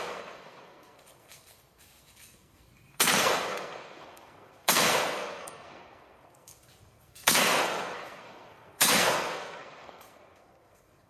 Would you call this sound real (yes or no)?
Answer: no